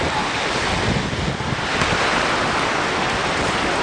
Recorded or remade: recorded